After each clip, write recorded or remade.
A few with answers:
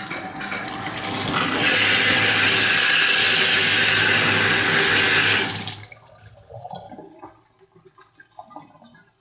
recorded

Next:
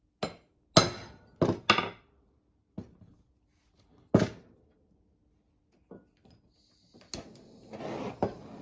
recorded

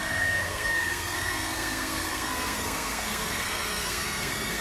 remade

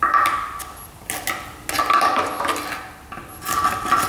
recorded